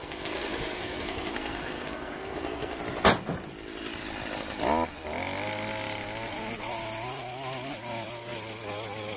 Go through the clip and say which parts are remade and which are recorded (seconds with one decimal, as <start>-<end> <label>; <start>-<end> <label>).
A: 0.0-2.8 remade; 2.8-9.2 recorded